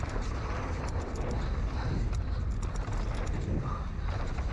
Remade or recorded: recorded